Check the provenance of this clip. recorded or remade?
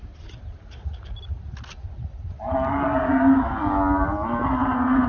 recorded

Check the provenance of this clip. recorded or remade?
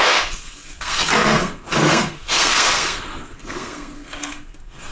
remade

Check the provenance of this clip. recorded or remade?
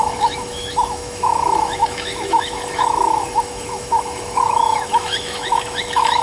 remade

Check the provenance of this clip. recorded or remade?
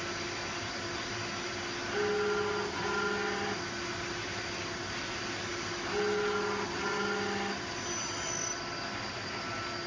recorded